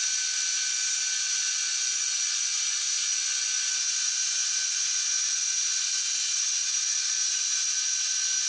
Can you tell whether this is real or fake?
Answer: real